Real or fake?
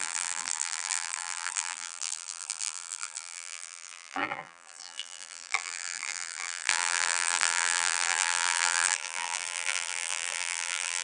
fake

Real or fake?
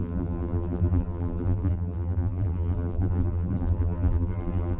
fake